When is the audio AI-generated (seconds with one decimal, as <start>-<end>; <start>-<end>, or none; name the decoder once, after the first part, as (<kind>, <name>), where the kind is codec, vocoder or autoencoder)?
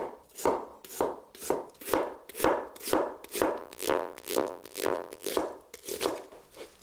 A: 3.6-5.3 (vocoder, BigVGAN v2)